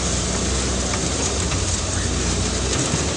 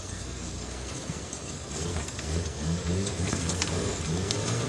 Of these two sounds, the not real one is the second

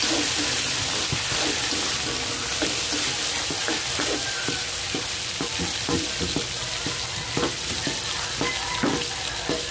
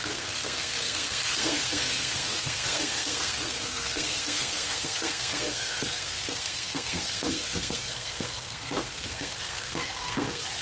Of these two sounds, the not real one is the second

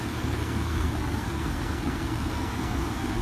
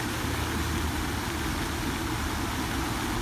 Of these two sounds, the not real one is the first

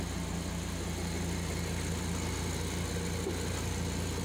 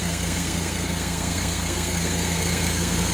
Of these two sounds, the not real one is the second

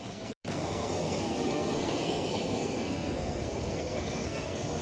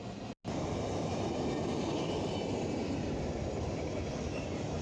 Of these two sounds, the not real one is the first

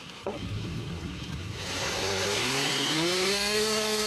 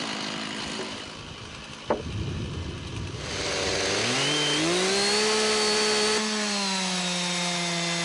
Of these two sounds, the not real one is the first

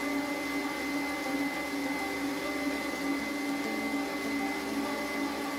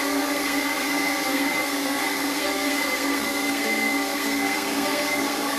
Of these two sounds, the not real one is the second